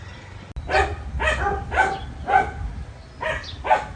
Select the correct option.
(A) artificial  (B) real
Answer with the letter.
B